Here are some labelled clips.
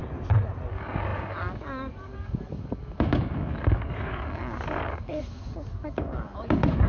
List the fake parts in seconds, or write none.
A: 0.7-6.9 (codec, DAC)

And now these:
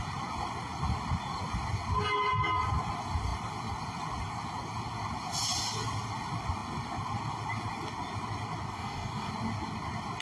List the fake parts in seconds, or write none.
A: 8.7-9.3 (codec, DAC)

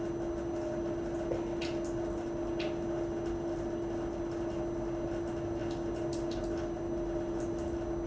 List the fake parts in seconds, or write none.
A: none